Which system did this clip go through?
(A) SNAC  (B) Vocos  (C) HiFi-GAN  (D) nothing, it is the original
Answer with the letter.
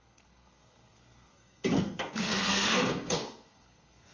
A